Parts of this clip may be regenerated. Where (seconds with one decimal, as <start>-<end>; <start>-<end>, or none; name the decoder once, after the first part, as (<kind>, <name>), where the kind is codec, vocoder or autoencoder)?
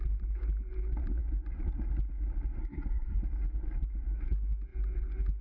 2.6-3.2 (codec, SNAC)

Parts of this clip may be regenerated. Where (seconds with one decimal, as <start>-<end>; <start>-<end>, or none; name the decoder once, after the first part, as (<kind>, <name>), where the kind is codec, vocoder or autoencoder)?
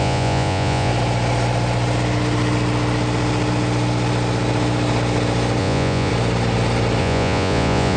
0.0-0.9 (vocoder, Vocos); 5.6-6.1; 7.0-8.0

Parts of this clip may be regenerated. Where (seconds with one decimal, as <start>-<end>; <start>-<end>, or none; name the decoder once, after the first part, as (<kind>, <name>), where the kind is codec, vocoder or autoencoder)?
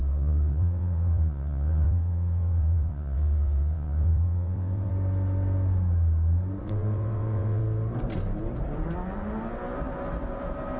0.0-4.9 (vocoder, WaveNeXt); 6.6-7.6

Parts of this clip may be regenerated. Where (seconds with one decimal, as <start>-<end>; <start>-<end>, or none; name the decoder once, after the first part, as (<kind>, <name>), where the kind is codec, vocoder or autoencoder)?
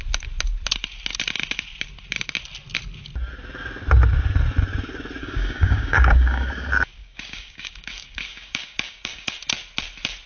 5.2-6.5 (codec, DAC); 7.0-9.4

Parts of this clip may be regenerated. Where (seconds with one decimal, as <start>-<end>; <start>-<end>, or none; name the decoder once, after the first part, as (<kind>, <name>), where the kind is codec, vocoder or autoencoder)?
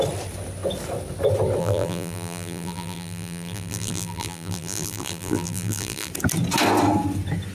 1.6-6.1 (vocoder, BigVGAN v2)